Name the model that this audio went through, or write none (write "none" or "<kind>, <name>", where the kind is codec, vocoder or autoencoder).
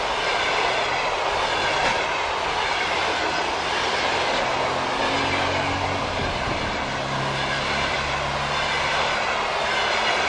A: none